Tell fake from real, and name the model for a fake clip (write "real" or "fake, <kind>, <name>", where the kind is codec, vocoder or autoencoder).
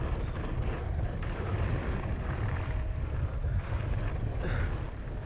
real